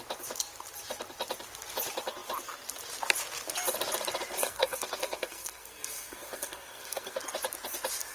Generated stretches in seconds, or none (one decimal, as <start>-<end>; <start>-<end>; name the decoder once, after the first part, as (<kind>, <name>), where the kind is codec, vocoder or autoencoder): 4.4-7.2 (codec, SNAC)

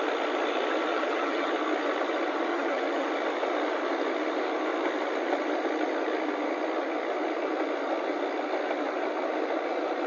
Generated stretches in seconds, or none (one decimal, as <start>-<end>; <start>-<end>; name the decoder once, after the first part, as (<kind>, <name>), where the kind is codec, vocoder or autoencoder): 0.9-1.5 (vocoder, HiFi-GAN); 2.5-3.1

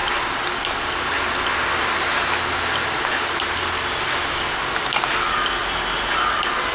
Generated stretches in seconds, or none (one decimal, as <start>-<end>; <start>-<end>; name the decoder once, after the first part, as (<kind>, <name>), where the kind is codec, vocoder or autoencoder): none

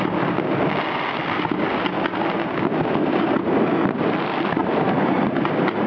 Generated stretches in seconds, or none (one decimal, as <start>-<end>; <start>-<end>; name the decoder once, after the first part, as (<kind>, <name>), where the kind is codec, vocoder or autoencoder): 4.6-5.4 (vocoder, BigVGAN v2)